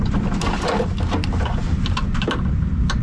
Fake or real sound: real